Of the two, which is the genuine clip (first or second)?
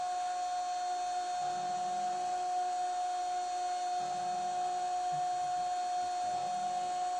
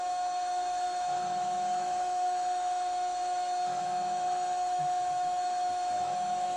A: first